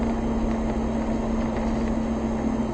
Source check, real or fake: real